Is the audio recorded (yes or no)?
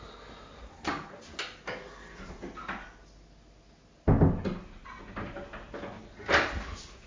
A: yes